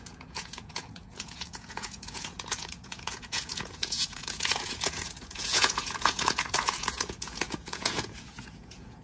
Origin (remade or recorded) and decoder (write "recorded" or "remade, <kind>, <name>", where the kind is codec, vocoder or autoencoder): remade, vocoder, Vocos